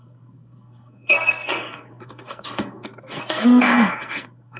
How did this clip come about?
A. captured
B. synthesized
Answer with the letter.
B